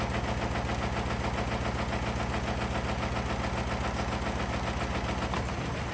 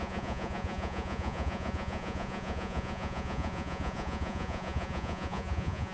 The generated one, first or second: second